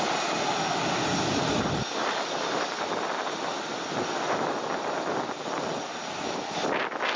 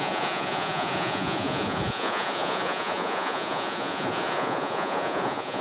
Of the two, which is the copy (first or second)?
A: second